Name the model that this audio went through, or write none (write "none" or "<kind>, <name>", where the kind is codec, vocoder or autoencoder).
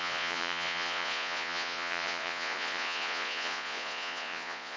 vocoder, Vocos